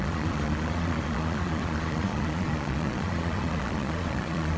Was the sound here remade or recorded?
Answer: remade